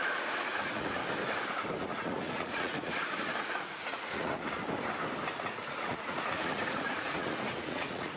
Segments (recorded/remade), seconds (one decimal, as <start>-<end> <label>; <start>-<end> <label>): 0.0-1.0 remade; 1.0-1.8 recorded; 1.8-4.6 remade; 4.6-5.3 recorded; 5.3-8.2 remade